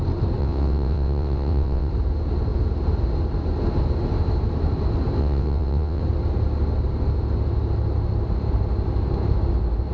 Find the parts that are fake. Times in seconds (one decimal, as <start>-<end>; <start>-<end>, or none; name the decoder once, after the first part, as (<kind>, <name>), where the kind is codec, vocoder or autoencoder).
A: 0.4-1.9 (vocoder, WaveNeXt); 5.2-6.0